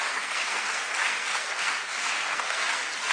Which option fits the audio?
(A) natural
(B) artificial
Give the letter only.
B